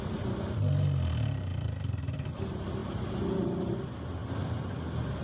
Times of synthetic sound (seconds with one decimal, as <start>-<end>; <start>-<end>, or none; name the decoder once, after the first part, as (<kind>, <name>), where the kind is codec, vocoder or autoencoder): 1.5-2.4 (vocoder, BigVGAN v2); 4.2-5.2